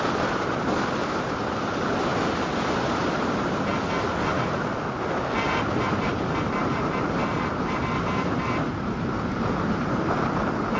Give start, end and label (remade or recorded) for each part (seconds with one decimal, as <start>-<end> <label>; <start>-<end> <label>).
0.0-3.7 remade; 3.7-4.2 recorded; 4.2-4.7 remade; 4.7-5.7 recorded; 5.7-10.8 remade